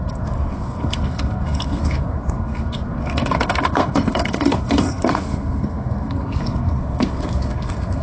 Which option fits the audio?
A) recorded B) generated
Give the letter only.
B